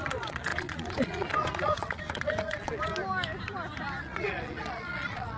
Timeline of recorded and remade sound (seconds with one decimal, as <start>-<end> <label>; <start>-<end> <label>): 0.0-2.9 remade; 2.9-4.0 recorded; 4.0-5.4 remade